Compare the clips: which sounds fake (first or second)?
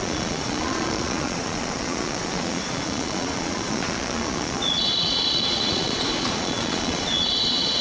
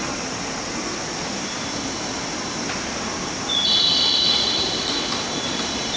first